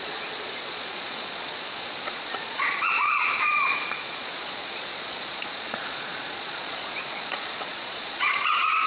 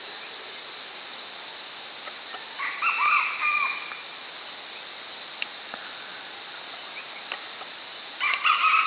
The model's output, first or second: first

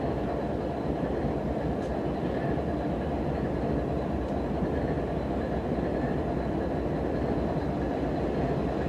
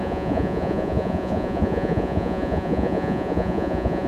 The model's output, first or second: second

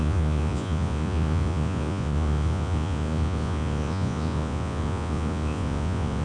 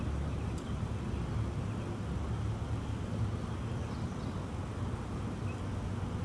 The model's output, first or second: first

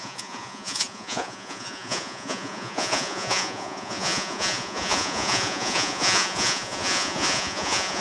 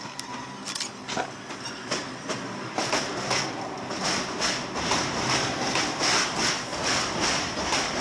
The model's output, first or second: first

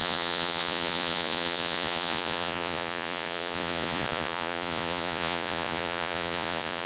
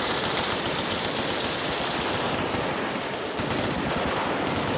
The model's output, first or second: first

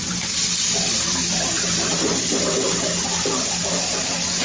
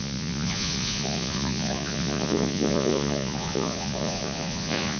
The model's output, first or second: second